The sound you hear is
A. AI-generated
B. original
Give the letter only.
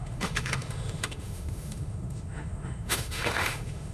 A